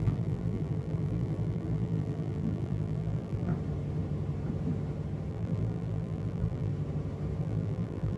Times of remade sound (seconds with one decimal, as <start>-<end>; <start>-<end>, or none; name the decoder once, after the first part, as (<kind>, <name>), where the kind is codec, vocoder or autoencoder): 0.0-3.5 (vocoder, BigVGAN v2); 5.3-6.7; 7.4-8.2